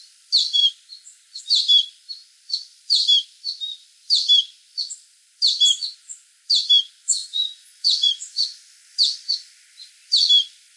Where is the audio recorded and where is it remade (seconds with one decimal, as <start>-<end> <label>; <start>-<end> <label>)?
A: 0.0-7.2 recorded; 7.2-8.1 remade; 8.1-10.8 recorded